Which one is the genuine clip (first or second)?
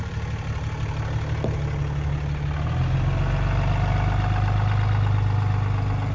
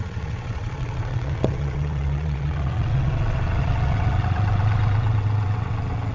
first